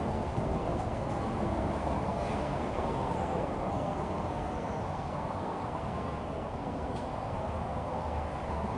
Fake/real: fake